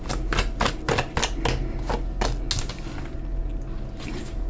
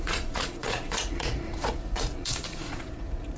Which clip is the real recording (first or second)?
first